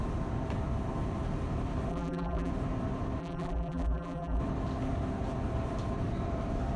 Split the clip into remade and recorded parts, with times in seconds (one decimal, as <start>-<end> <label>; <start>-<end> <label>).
0.0-1.9 recorded; 1.9-2.5 remade; 2.5-3.2 recorded; 3.2-4.4 remade; 4.4-6.8 recorded